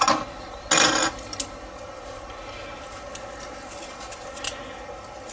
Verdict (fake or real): real